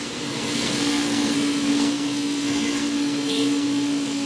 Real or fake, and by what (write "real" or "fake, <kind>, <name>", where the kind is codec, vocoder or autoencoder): fake, codec, SNAC